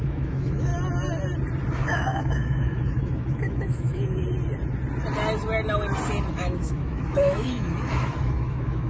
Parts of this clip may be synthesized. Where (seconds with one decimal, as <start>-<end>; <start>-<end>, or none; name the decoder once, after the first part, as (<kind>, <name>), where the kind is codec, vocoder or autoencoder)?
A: 0.0-0.7 (autoencoder, DAC-VAE); 1.7-4.2; 6.3-8.9